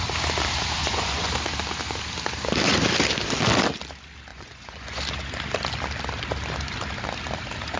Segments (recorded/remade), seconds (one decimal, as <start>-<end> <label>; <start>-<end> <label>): 0.0-0.8 recorded; 0.8-1.3 remade; 1.3-4.3 recorded; 4.3-5.0 remade; 5.0-7.8 recorded